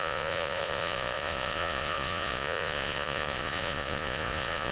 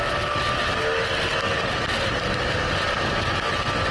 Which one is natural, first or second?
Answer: second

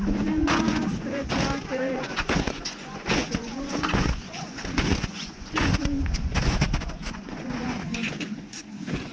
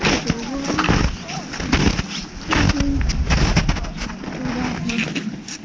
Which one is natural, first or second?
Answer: second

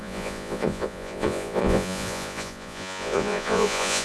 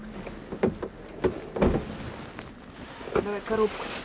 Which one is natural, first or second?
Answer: second